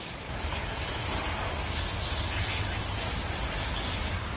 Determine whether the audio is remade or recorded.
recorded